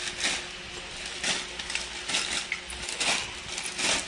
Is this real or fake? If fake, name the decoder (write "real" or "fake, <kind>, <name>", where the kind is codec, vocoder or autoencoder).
real